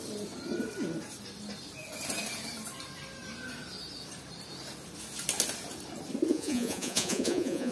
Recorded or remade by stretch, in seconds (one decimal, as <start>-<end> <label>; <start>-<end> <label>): 0.0-6.3 recorded; 6.3-7.7 remade